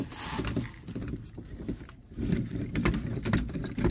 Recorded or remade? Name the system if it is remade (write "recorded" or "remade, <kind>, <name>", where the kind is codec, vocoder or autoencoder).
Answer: recorded